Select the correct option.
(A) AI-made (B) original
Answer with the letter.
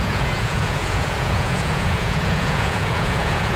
A